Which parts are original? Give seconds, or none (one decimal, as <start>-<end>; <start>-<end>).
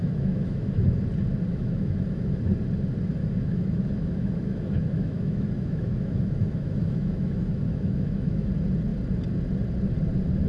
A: 1.0-1.5; 2.4-3.2; 8.5-10.5